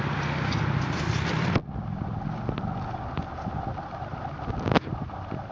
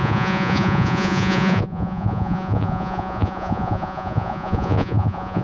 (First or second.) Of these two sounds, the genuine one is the first